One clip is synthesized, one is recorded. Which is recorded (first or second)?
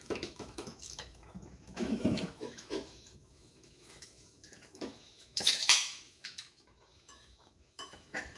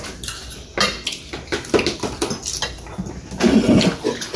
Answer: second